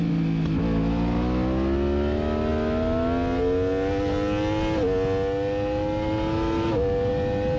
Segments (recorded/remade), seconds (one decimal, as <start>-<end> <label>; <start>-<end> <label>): 0.0-7.6 recorded